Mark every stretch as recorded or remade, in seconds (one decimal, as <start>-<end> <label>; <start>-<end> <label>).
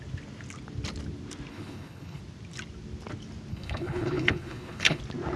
0.0-1.5 recorded; 1.5-2.2 remade; 2.2-3.5 recorded; 3.5-5.0 remade; 5.0-5.4 recorded